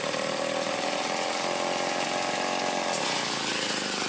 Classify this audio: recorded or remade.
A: recorded